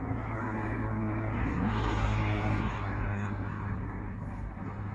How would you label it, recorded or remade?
remade